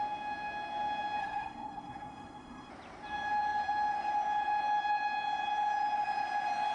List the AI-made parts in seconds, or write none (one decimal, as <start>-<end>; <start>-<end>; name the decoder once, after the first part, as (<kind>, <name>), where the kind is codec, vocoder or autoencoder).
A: 1.2-2.7 (codec, SNAC)